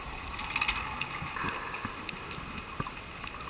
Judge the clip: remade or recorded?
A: recorded